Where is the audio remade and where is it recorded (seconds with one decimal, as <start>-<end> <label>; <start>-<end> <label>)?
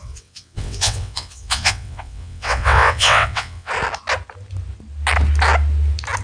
0.0-3.7 remade; 3.7-6.2 recorded